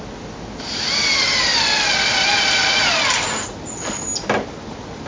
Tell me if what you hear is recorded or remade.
recorded